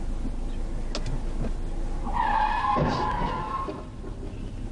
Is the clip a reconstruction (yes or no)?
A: no